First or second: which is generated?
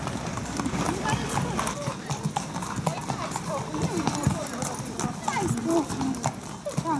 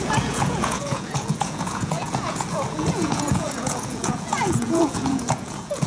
second